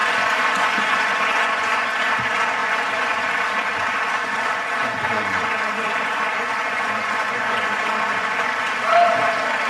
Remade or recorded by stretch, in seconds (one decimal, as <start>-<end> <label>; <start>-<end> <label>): 0.0-2.1 remade; 2.1-2.6 recorded; 2.6-3.3 remade; 3.3-4.2 recorded; 4.2-8.7 remade; 8.7-9.7 recorded